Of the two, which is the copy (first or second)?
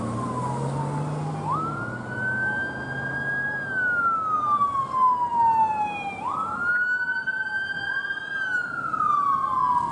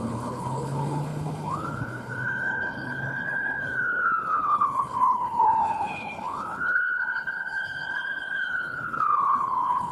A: second